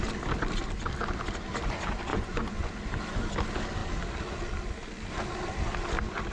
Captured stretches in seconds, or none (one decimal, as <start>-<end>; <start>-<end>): 0.0-2.1; 2.7-6.3

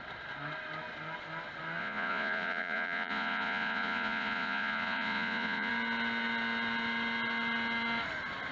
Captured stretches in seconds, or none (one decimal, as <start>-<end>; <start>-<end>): 0.0-1.8; 5.7-8.5

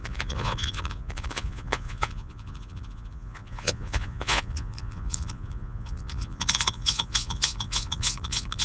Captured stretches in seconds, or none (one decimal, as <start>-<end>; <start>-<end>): none

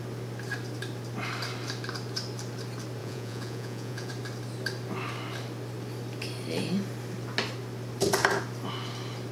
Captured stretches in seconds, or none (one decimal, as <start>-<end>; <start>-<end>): 0.0-3.0; 4.1-9.3

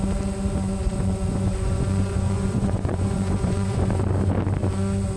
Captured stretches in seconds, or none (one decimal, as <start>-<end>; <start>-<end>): 0.0-0.8; 3.9-5.2

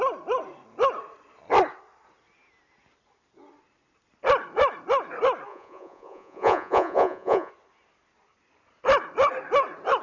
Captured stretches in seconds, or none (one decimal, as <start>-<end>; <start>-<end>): 0.0-5.5; 7.5-10.0

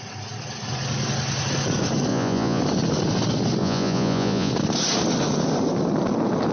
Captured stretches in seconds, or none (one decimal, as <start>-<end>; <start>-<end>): 0.0-2.1; 2.6-3.6; 4.5-6.5